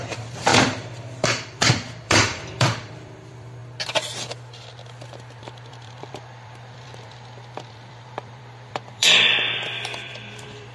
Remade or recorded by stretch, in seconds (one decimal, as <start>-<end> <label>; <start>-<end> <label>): 0.0-3.6 remade; 3.6-5.4 recorded; 5.4-10.7 remade